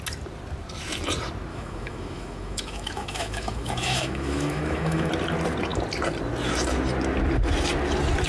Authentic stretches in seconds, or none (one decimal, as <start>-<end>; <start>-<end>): 0.0-1.5; 5.1-8.3